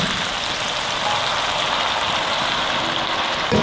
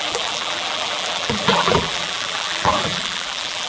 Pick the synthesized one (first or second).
second